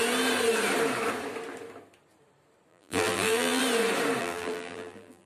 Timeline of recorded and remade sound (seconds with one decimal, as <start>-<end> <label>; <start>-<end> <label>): 0.0-2.7 recorded; 2.7-3.6 remade; 3.6-4.2 recorded; 4.2-5.3 remade